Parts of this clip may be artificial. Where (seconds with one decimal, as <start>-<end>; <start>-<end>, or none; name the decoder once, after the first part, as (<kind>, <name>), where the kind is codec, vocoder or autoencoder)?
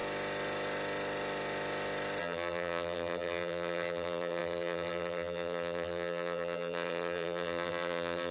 2.2-8.3 (vocoder, BigVGAN v2)